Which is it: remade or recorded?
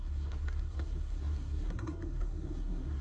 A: remade